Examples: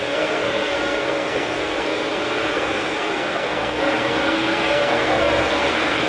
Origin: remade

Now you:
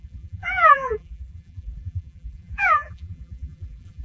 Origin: remade